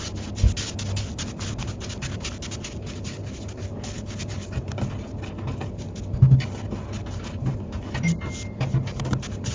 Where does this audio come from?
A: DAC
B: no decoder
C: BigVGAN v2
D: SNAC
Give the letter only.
B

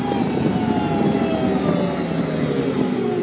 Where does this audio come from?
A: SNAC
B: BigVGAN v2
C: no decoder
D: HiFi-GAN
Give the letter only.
C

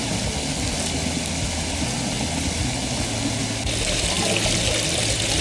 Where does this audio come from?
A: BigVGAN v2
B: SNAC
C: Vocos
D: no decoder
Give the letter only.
D